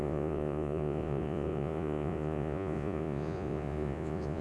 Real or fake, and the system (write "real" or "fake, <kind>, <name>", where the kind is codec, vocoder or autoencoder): fake, vocoder, Vocos